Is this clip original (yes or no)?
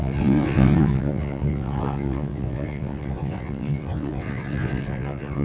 no